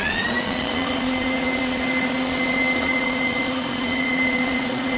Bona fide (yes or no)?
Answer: no